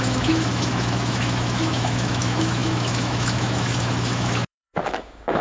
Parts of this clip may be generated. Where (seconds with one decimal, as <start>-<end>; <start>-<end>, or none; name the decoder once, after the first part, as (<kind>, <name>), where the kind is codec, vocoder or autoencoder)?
0.0-5.4 (autoencoder, DAC-VAE)

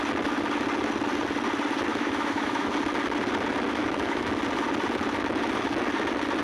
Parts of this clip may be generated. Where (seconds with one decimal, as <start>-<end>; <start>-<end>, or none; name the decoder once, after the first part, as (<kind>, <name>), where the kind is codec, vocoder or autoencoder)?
1.9-2.7 (autoencoder, DAC-VAE); 3.8-4.3